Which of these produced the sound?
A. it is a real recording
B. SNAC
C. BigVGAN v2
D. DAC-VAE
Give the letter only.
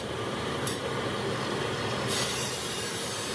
C